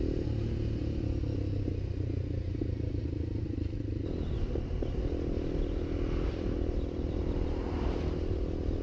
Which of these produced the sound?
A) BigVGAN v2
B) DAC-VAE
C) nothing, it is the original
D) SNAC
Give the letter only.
C